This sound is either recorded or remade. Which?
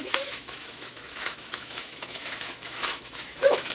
remade